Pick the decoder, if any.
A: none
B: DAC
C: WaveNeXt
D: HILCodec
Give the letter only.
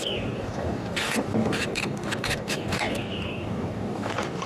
B